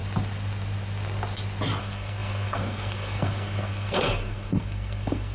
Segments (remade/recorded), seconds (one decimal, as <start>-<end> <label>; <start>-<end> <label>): 0.0-1.8 recorded; 1.8-5.3 remade